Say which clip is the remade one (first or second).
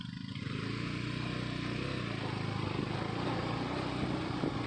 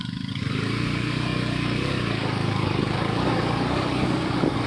second